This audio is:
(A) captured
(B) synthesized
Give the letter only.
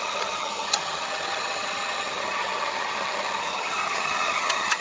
B